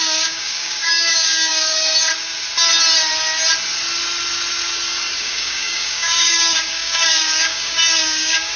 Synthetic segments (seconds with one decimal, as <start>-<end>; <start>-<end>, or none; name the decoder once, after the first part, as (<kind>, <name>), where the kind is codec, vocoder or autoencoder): 0.0-1.9 (codec, DAC); 5.2-8.6